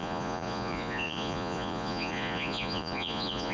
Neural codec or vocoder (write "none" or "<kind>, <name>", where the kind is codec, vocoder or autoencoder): vocoder, Vocos